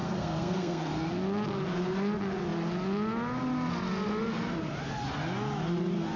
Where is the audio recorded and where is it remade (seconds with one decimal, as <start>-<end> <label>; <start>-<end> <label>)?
0.0-1.1 remade; 1.1-6.2 recorded